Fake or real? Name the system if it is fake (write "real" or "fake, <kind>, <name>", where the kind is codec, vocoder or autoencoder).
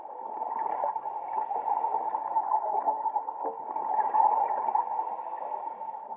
real